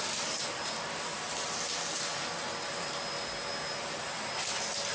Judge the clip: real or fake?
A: real